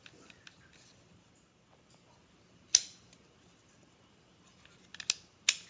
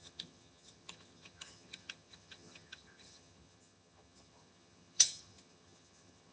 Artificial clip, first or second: second